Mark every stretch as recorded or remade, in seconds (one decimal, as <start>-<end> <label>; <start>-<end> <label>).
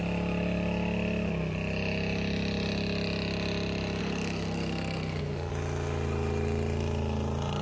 0.0-4.0 recorded; 4.0-5.5 remade; 5.5-7.6 recorded